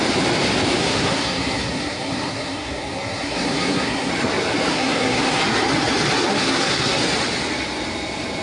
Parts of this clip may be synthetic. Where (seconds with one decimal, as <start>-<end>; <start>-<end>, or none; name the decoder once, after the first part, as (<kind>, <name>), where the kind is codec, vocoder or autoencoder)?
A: 0.8-4.1 (codec, SNAC); 4.7-5.4; 6.3-7.0